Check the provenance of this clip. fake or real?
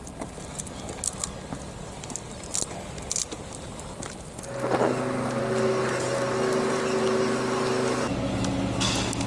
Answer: real